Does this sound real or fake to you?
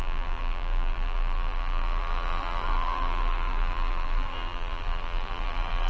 fake